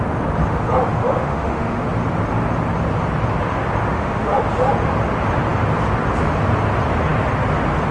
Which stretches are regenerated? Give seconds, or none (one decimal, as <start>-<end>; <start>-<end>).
0.9-1.9; 3.9-4.4